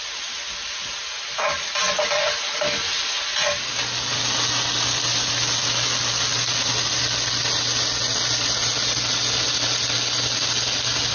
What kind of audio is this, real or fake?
real